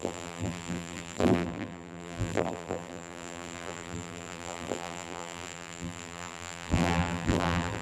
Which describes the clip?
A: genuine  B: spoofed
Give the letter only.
B